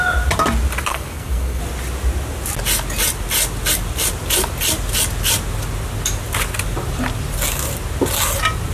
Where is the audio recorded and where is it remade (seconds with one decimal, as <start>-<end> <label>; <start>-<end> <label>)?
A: 0.0-0.9 recorded; 0.9-1.6 remade; 1.6-8.7 recorded

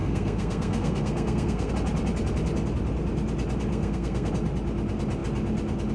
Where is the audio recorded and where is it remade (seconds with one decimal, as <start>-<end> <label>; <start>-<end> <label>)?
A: 0.0-1.7 remade; 1.7-3.7 recorded; 3.7-4.3 remade; 4.3-5.9 recorded